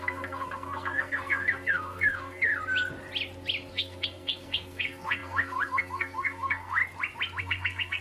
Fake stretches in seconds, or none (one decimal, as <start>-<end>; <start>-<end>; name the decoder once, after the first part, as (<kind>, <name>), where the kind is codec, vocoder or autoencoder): 0.0-2.5 (codec, SNAC); 3.7-6.8; 7.4-8.0